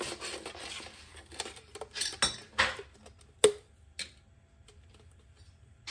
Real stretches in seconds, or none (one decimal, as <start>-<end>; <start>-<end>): 0.0-5.9